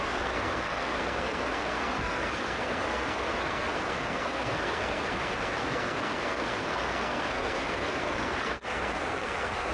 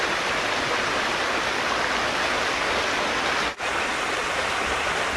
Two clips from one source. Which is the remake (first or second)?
first